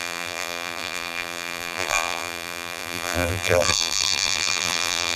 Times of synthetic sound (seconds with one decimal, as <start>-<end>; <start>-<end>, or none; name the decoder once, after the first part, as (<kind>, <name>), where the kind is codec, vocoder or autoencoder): 0.0-5.2 (vocoder, BigVGAN v2)